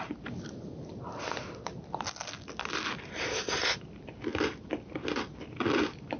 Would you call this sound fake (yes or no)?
no